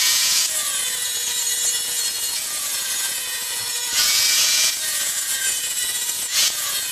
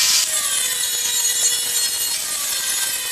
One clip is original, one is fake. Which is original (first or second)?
second